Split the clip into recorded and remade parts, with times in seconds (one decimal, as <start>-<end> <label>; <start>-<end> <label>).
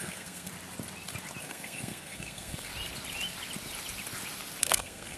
0.0-0.5 remade; 0.5-1.4 recorded; 1.4-2.7 remade; 2.7-4.6 recorded; 4.6-5.2 remade